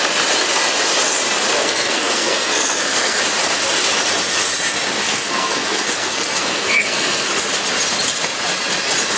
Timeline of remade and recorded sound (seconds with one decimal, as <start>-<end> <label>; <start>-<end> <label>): 0.0-1.6 recorded; 1.6-3.2 remade; 3.2-5.0 recorded; 5.0-7.3 remade; 7.3-9.2 recorded